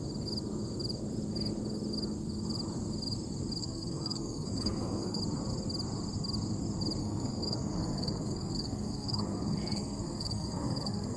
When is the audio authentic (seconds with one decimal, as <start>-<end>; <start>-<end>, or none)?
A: 0.0-3.6; 5.2-7.0